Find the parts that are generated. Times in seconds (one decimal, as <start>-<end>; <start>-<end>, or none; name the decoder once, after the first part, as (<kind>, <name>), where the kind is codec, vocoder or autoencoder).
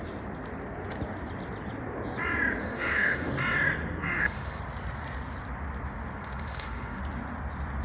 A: 2.6-3.3 (autoencoder, DAC-VAE); 4.0-4.6; 6.2-7.0